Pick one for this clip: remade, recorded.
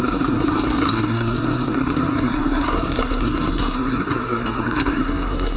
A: remade